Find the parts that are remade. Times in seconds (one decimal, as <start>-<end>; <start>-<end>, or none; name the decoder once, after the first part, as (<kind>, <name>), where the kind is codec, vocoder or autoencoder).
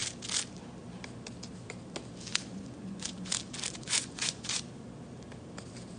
2.3-3.3 (vocoder, Vocos); 3.8-4.6